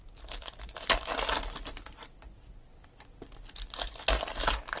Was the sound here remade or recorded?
recorded